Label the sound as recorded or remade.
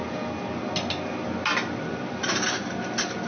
recorded